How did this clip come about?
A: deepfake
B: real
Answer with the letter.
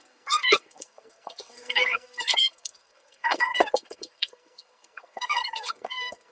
A